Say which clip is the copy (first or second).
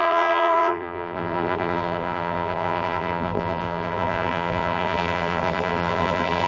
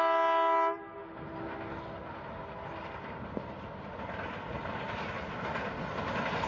first